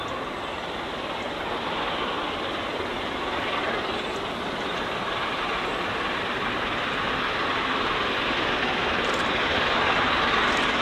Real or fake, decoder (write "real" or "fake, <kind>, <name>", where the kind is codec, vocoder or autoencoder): real